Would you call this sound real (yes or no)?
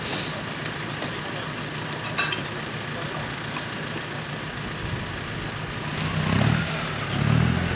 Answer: yes